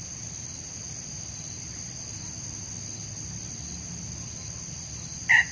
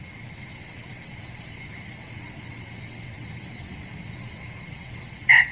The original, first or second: first